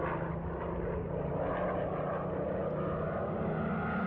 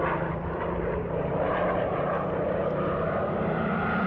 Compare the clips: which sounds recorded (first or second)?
first